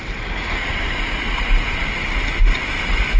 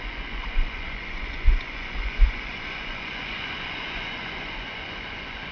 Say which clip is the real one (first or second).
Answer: first